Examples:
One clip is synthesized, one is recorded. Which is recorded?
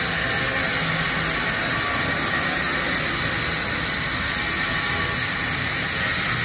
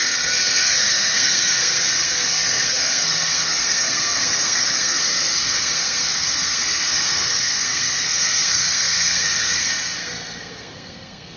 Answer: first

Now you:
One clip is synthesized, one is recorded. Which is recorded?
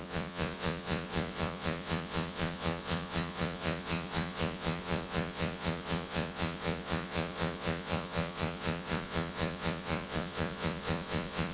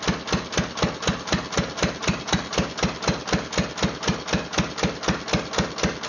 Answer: second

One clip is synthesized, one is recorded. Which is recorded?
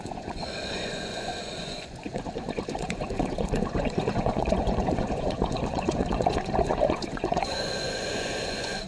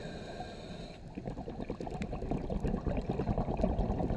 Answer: second